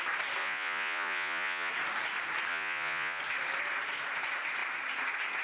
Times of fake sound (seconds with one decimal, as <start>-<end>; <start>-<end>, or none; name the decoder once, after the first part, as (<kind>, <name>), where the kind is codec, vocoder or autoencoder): 0.4-1.7 (vocoder, Vocos); 2.5-3.2